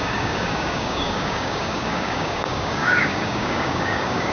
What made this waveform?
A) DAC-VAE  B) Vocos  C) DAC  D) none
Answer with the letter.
C